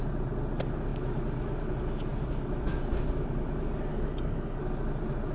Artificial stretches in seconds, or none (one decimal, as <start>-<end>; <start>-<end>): 3.9-4.6